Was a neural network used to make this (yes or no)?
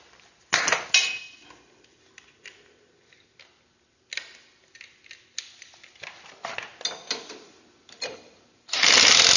no